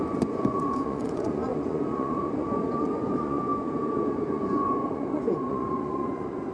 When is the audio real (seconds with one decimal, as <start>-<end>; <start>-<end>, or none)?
none